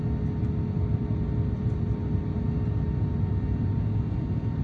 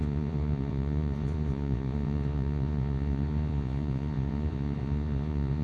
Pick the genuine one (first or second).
first